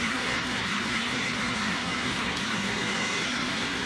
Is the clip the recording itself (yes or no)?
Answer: no